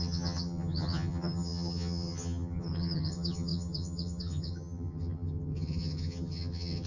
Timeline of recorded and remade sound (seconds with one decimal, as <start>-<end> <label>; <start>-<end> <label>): 0.0-6.9 remade